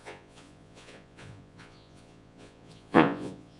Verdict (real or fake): fake